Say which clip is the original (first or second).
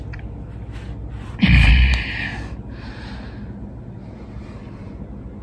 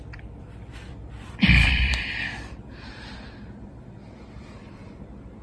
first